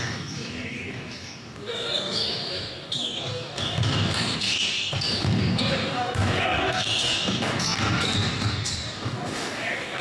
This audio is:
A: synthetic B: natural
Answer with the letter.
A